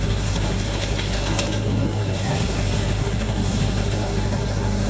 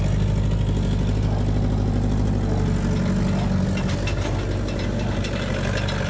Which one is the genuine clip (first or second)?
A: second